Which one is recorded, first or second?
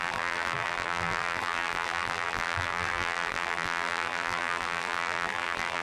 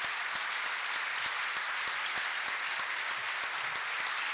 second